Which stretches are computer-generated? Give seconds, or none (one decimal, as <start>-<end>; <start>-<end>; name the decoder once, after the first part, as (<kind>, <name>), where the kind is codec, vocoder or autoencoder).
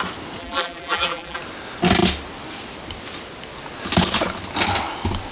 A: 0.4-1.4 (vocoder, BigVGAN v2)